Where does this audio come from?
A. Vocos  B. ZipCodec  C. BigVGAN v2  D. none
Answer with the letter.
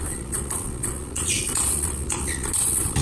A